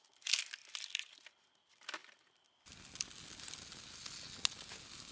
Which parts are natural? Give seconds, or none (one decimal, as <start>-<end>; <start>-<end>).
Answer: 0.0-5.1